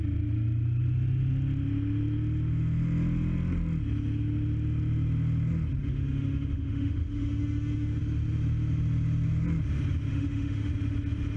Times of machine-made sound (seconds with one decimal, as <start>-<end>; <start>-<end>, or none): 5.8-8.0; 10.1-10.7

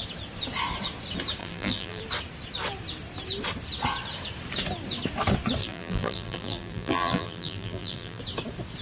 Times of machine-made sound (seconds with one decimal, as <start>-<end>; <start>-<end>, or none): 1.4-2.0; 5.6-8.2

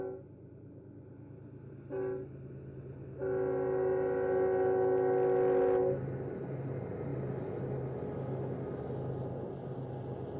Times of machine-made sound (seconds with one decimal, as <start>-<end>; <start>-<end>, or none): none

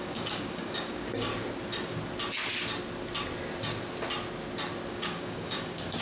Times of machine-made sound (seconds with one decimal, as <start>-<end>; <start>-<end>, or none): 0.0-1.3; 4.9-6.0

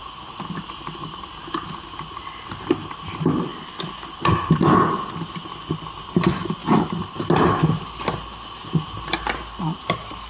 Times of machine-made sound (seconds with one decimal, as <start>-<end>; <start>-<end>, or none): 0.0-3.5; 6.0-6.6; 7.1-10.3